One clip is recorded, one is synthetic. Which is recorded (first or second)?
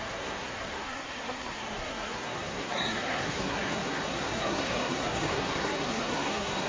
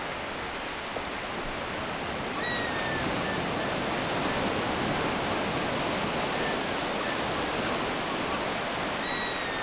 second